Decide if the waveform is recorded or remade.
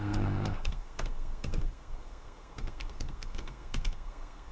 remade